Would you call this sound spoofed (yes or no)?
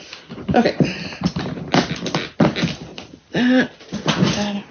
no